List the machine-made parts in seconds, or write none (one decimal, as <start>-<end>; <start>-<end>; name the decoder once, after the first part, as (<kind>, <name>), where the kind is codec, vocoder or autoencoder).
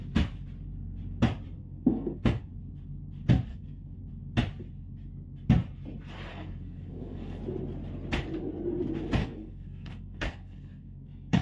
1.6-2.5 (codec, SNAC); 3.5-4.1; 6.3-7.4; 9.2-11.4